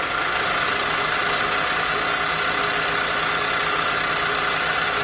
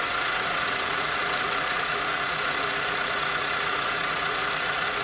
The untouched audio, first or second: first